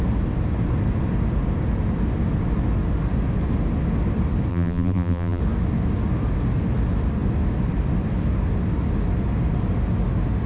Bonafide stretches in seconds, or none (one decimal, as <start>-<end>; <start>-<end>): 0.0-4.5; 5.4-10.5